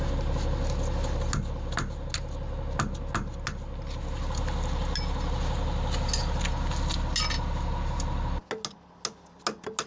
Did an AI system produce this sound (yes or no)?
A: no